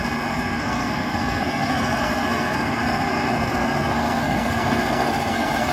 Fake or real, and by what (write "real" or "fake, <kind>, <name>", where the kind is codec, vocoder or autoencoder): fake, codec, SNAC